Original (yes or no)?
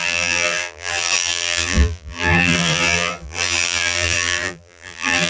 no